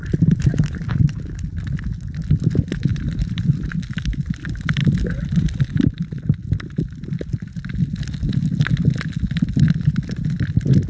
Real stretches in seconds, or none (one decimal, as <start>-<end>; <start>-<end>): 0.0-0.5; 1.1-2.9; 3.7-10.9